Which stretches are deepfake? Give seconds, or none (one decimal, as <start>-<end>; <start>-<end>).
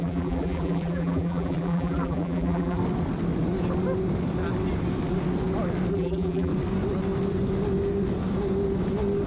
0.0-2.8; 5.9-6.5